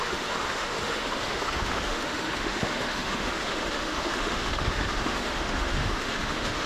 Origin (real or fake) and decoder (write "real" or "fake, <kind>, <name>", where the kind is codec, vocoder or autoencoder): fake, autoencoder, DAC-VAE